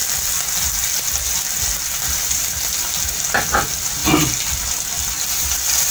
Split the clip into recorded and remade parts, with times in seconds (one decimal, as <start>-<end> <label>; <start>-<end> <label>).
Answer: 0.0-2.2 recorded; 2.2-4.0 remade; 4.0-5.4 recorded; 5.4-5.9 remade